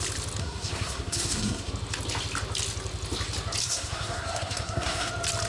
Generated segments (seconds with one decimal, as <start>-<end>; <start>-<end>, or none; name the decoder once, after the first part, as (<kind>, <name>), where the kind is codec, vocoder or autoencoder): 0.4-1.7 (codec, SNAC); 3.6-5.1